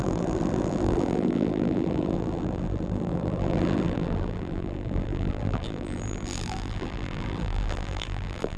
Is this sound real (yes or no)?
no